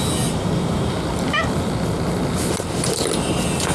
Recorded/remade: recorded